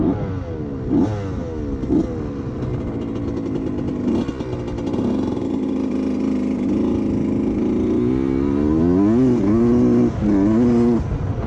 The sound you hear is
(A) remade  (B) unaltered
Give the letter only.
B